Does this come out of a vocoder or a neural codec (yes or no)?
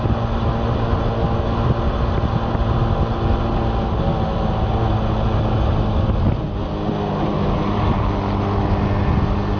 no